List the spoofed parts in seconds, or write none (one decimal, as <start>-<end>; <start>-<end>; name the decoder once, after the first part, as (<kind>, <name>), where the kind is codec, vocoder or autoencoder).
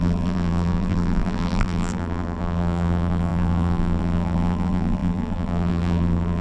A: 0.0-6.4 (vocoder, BigVGAN v2)